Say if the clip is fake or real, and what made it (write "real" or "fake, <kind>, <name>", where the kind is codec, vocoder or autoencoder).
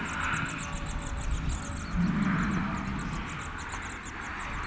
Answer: real